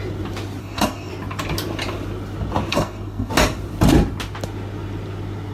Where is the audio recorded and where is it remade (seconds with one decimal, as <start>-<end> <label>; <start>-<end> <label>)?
0.0-0.6 recorded; 0.6-1.1 remade; 1.1-2.7 recorded; 2.7-3.3 remade; 3.3-5.5 recorded